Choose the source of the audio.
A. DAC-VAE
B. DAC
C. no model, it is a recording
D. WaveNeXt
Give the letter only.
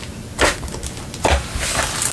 C